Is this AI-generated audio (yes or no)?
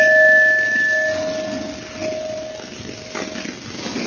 no